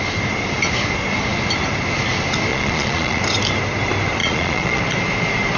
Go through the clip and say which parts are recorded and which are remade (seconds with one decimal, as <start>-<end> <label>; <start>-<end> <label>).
0.0-2.5 recorded; 2.5-3.2 remade; 3.2-4.2 recorded; 4.2-4.8 remade; 4.8-5.6 recorded